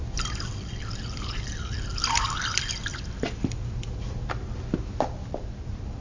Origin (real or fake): real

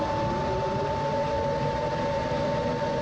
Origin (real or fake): real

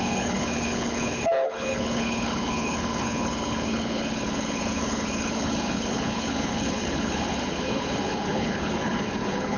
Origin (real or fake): fake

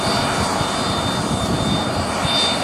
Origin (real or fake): real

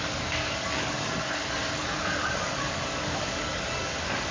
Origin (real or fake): fake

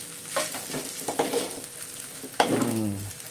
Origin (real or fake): real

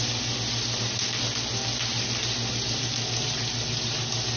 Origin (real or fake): real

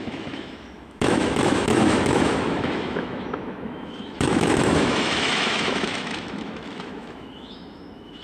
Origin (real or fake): fake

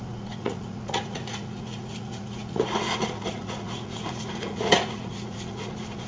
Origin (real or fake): fake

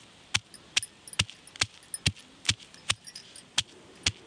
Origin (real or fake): real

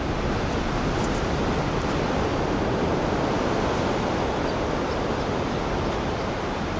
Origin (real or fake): real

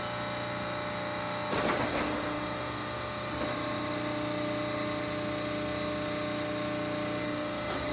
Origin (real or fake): real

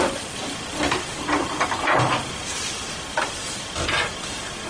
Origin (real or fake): real